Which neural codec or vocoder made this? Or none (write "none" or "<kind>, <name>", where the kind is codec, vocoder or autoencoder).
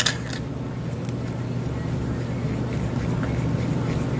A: none